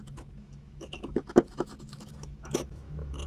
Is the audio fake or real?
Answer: fake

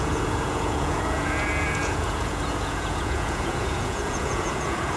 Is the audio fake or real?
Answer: fake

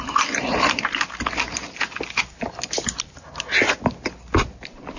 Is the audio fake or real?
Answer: real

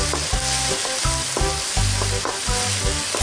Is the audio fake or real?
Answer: real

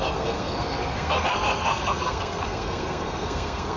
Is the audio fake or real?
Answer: fake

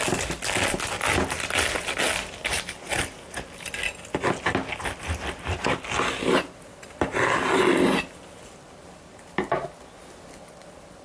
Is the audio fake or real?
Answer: real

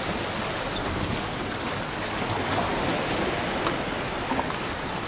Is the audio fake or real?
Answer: real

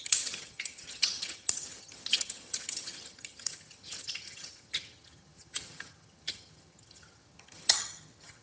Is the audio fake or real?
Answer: fake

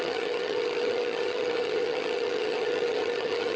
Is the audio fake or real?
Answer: fake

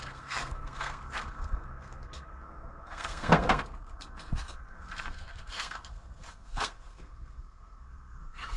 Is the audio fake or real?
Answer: fake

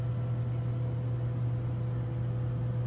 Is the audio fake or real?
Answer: real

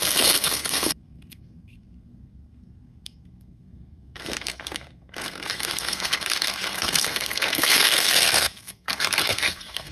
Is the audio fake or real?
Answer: fake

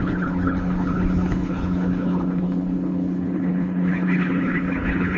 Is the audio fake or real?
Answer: fake